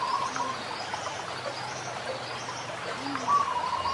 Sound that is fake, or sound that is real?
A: real